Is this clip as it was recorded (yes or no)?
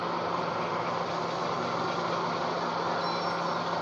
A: yes